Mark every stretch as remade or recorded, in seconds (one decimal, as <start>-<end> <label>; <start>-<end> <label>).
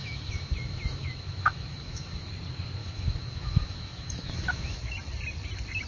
0.0-2.3 remade; 2.3-2.8 recorded; 2.8-4.8 remade; 4.8-5.9 recorded